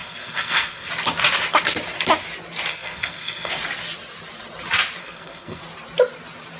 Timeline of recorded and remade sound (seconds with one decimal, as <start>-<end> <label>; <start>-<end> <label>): 0.0-0.9 remade; 0.9-2.7 recorded; 2.7-3.5 remade; 3.5-5.0 recorded; 5.0-5.6 remade; 5.6-6.6 recorded